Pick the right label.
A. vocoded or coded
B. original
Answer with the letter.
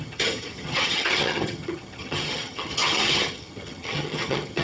A